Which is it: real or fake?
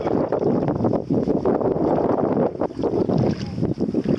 real